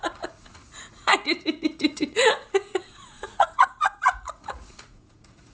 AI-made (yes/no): yes